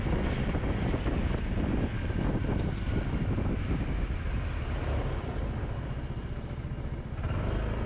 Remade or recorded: recorded